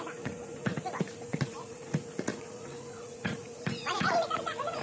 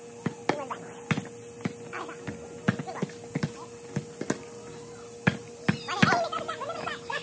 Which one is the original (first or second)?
second